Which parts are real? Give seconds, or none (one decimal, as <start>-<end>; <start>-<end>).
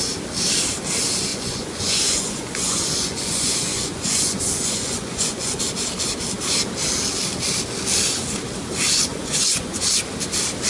0.0-1.3; 5.6-9.1; 9.9-10.7